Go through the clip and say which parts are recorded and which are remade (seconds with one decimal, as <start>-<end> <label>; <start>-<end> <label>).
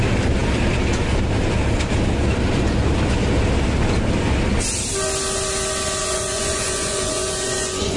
0.0-6.0 recorded; 6.0-8.0 remade